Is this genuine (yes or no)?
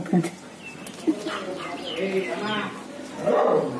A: yes